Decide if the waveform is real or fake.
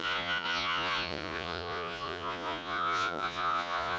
fake